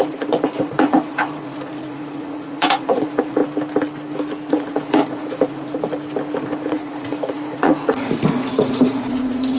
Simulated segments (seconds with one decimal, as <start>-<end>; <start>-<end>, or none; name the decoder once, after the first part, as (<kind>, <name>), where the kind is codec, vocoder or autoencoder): 0.0-3.4 (vocoder, Vocos); 4.5-5.8; 6.4-9.6